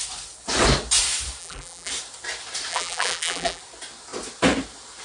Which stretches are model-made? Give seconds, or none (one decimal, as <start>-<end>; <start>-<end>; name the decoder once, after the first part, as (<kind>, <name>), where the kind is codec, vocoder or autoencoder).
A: 1.4-1.9 (vocoder, BigVGAN v2); 2.7-3.6